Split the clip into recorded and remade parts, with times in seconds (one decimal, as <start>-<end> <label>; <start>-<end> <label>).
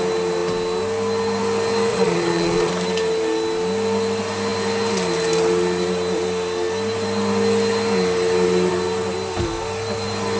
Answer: 0.0-1.9 recorded; 1.9-2.7 remade; 2.7-10.4 recorded